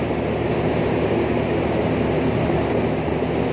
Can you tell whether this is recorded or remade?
recorded